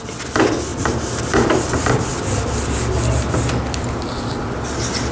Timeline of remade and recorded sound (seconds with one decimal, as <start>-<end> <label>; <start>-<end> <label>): 0.0-0.7 recorded; 0.7-2.0 remade; 2.0-5.1 recorded